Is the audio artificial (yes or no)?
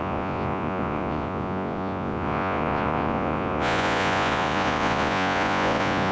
yes